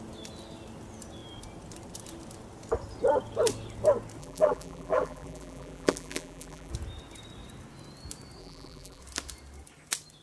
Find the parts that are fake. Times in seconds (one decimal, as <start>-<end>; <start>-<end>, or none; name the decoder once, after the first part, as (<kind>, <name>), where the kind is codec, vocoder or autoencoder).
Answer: 4.2-6.7 (vocoder, BigVGAN v2); 8.4-9.0